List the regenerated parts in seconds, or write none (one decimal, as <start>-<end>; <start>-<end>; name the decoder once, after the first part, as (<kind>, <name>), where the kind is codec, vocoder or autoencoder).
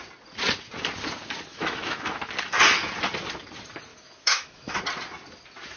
1.5-2.2 (autoencoder, DAC-VAE); 3.9-4.8